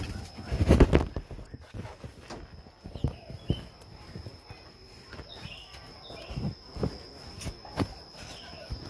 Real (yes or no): yes